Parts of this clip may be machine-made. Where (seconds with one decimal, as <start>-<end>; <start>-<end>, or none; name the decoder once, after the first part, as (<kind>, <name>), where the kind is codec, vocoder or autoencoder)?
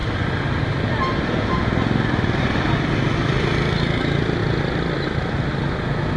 none